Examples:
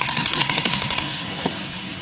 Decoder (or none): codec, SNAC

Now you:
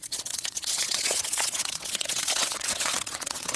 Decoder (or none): vocoder, WaveNeXt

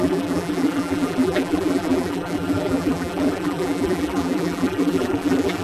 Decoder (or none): vocoder, BigVGAN v2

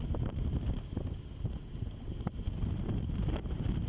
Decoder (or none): vocoder, BigVGAN v2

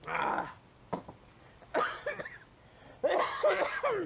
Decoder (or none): none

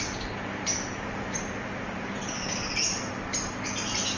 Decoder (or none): vocoder, BigVGAN v2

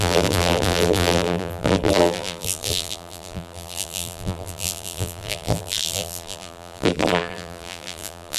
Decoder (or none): vocoder, BigVGAN v2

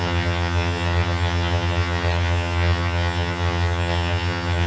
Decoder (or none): vocoder, HiFi-GAN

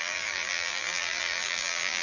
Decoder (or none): vocoder, BigVGAN v2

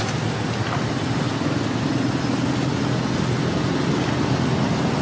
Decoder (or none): none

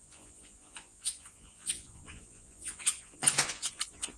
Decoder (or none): vocoder, Vocos